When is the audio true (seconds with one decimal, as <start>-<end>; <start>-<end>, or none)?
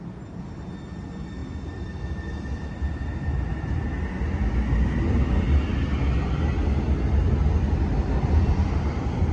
0.0-9.3